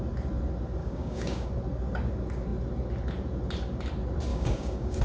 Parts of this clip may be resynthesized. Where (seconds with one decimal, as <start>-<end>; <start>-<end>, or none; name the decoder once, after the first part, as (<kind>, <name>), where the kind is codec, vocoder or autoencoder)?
0.8-1.5 (codec, DAC); 4.3-5.0